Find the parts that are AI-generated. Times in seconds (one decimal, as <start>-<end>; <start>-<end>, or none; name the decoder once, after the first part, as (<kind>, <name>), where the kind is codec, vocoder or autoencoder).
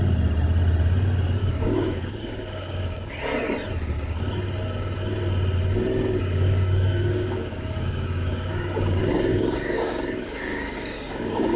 1.4-3.1 (codec, DAC); 6.2-11.6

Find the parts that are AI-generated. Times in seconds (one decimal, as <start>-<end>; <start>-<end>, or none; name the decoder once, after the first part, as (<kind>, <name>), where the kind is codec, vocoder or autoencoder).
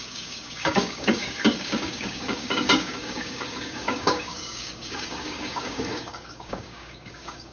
0.0-7.5 (codec, DAC)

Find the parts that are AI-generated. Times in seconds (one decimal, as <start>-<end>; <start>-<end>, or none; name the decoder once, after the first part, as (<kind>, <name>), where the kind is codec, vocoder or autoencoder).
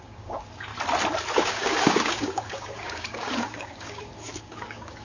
0.0-0.7 (codec, DAC); 1.3-5.0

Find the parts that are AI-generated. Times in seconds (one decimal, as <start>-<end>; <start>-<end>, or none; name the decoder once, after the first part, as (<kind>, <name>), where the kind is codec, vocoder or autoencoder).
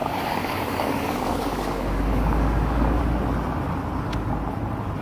0.0-3.0 (codec, DAC)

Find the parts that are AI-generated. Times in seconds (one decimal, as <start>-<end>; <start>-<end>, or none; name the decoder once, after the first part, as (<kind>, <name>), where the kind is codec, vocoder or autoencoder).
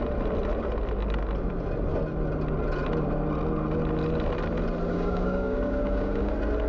4.9-6.3 (codec, DAC)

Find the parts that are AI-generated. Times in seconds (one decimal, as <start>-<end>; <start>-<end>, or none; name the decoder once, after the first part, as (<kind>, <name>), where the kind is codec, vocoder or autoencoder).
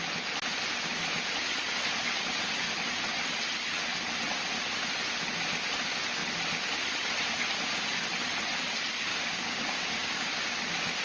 9.1-10.6 (codec, DAC)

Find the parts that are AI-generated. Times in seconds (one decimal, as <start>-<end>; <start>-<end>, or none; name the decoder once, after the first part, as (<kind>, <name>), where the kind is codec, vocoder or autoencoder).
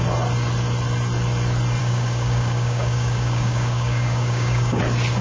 1.8-4.8 (codec, DAC)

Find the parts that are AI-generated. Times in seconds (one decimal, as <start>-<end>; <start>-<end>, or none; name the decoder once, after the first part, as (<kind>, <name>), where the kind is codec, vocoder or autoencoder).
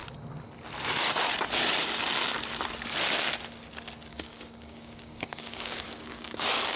4.1-6.8 (codec, DAC)